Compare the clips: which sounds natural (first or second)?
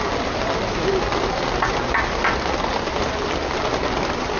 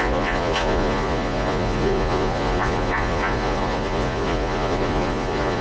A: first